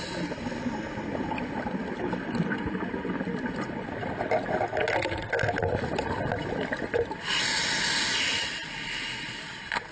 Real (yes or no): yes